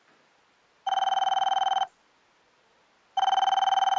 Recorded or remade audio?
recorded